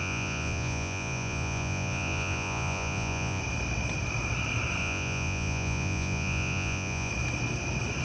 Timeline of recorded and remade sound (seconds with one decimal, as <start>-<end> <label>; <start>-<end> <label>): 0.0-3.4 remade; 3.4-4.8 recorded; 4.8-7.1 remade; 7.1-8.0 recorded